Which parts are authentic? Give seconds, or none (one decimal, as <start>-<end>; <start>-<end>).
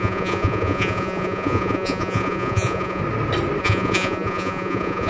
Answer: 3.0-3.6